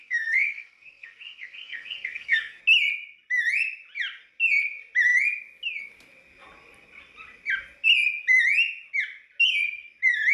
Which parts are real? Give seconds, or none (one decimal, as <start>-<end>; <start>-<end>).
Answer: 2.6-10.3